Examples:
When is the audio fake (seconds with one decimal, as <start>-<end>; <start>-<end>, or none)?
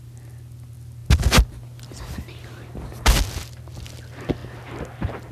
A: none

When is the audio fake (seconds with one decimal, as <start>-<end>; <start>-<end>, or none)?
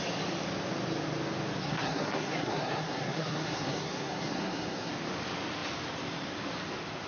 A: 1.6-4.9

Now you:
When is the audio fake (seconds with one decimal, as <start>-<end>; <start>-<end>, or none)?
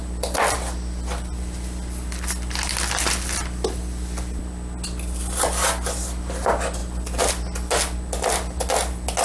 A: none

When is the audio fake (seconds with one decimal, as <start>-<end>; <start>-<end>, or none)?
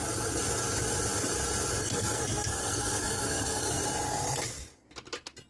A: 1.8-3.8